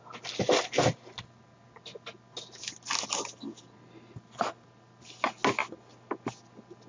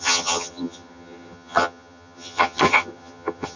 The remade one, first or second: second